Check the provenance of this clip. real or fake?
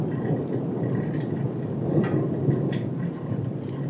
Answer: real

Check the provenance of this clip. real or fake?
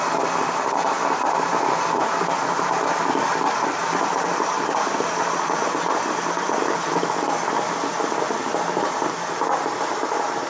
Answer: real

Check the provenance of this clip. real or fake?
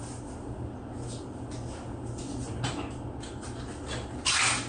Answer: real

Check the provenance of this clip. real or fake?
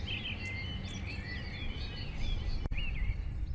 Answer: real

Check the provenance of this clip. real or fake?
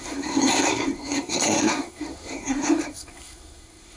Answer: fake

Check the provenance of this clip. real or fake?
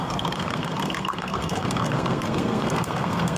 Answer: fake